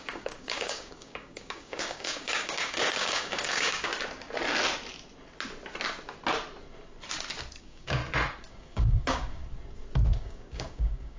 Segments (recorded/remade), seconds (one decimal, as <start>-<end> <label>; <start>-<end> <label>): 0.0-3.9 remade; 3.9-7.6 recorded; 7.6-8.0 remade; 8.0-8.5 recorded; 8.5-9.4 remade; 9.4-10.2 recorded; 10.2-11.2 remade